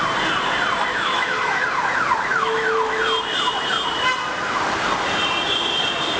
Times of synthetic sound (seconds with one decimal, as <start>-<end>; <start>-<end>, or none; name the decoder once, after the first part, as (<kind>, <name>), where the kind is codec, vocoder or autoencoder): 0.9-1.6 (autoencoder, DAC-VAE); 2.3-3.0